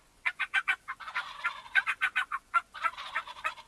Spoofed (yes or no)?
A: yes